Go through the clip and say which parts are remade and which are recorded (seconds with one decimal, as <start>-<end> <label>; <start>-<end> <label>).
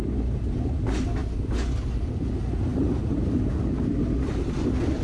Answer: 0.0-5.0 recorded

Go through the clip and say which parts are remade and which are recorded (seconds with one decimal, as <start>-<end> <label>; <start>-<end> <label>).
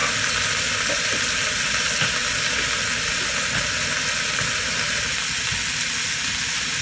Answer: 0.0-6.8 recorded